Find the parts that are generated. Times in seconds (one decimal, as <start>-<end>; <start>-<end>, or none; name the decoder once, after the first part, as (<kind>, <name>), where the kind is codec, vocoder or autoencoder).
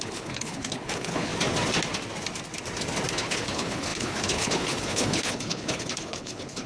0.0-1.3 (codec, HILCodec); 3.1-6.7